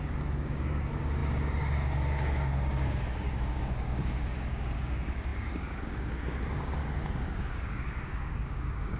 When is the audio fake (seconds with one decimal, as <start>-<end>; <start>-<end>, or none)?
0.0-6.8; 7.4-9.0